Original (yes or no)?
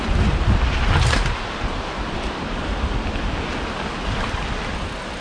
yes